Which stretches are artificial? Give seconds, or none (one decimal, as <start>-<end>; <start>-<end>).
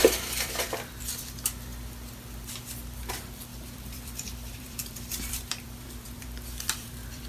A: 0.0-1.7; 3.1-7.3